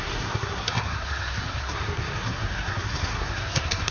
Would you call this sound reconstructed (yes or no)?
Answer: yes